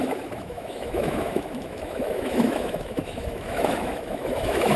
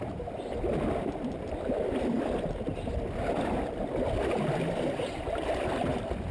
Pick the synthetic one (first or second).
first